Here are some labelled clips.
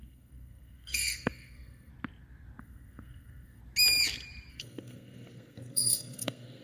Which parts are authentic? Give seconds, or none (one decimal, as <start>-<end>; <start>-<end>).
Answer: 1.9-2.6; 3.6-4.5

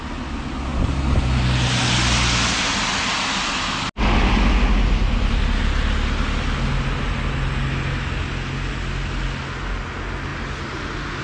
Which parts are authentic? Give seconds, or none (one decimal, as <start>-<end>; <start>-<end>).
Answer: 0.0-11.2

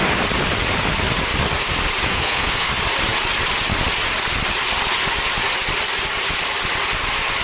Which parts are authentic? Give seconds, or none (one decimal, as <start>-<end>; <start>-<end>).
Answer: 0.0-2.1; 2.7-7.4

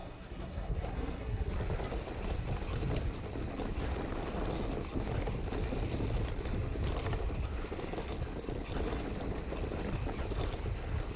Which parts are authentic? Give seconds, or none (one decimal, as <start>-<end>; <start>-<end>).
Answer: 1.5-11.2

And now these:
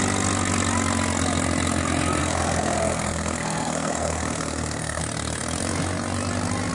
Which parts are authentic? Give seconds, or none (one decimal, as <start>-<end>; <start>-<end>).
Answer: 0.0-2.2; 5.0-6.7